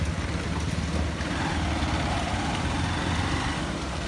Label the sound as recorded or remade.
recorded